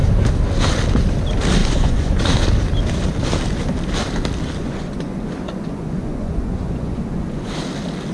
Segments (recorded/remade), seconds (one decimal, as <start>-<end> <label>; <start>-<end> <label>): 0.0-1.6 recorded; 1.6-2.2 remade; 2.2-4.6 recorded; 4.6-7.5 remade; 7.5-8.1 recorded